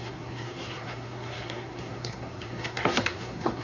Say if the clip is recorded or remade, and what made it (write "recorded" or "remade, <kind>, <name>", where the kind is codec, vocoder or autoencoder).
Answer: remade, codec, SNAC